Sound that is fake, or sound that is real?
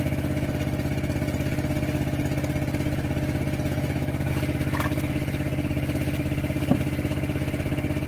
real